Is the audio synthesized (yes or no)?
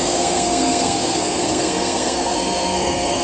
yes